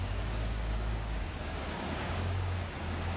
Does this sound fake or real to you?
fake